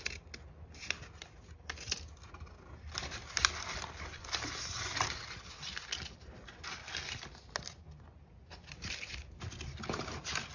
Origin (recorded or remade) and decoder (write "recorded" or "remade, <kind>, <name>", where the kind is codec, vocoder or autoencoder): recorded